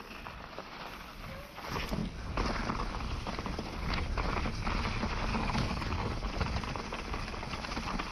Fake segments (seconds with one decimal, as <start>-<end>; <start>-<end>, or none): 5.3-6.3